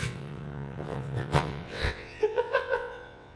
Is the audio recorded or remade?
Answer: remade